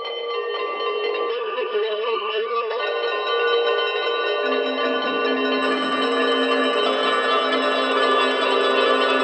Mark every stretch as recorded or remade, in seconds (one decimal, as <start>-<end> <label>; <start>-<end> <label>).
0.0-1.3 recorded; 1.3-2.8 remade; 2.8-9.2 recorded

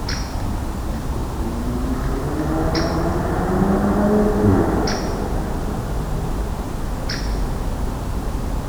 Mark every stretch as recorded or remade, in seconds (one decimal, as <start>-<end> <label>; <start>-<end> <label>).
0.0-1.2 recorded; 1.2-2.3 remade; 2.3-8.7 recorded

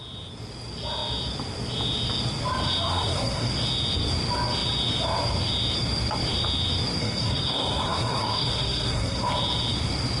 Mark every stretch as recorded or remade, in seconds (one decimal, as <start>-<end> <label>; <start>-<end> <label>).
0.0-2.9 recorded; 2.9-3.5 remade; 3.5-7.0 recorded; 7.0-9.3 remade; 9.3-10.2 recorded

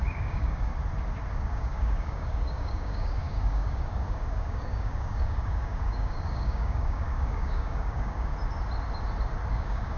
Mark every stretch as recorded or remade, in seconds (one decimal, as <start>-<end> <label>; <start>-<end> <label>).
0.0-0.7 remade; 0.7-1.3 recorded; 1.3-8.3 remade; 8.3-9.5 recorded; 9.5-10.0 remade

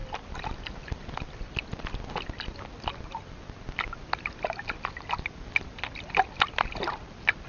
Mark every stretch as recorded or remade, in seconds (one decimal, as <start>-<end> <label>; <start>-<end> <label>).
0.0-7.5 recorded

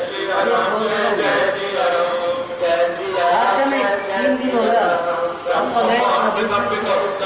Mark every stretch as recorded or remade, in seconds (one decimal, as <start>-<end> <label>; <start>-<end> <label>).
0.0-1.3 recorded; 1.3-2.1 remade; 2.1-3.3 recorded; 3.3-6.5 remade; 6.5-7.3 recorded

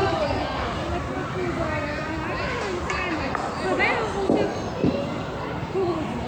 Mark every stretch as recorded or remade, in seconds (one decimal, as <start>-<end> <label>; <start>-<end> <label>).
0.0-4.8 recorded; 4.8-6.3 remade